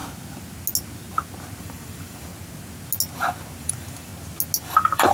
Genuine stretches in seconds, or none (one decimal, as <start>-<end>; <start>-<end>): 0.0-1.6; 2.3-3.6; 4.1-4.6